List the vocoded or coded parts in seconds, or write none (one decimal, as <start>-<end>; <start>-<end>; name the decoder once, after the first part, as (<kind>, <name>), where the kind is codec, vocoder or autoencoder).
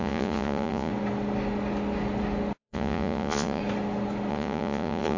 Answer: 0.0-0.9 (vocoder, Vocos); 2.6-3.6; 4.3-5.2